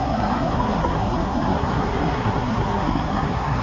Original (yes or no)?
no